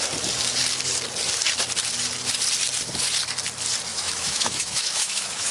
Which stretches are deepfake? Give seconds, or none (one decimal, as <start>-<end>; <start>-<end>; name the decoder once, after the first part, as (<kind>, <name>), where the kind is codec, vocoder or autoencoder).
3.9-5.5 (autoencoder, DAC-VAE)